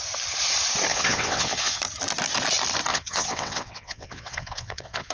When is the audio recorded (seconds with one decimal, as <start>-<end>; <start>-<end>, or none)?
0.0-0.9; 1.8-2.9